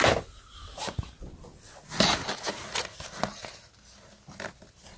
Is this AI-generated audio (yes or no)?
no